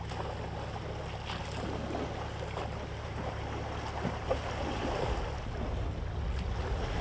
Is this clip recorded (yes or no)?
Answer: yes